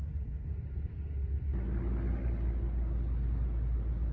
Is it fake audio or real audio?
real